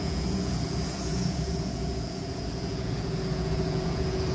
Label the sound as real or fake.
fake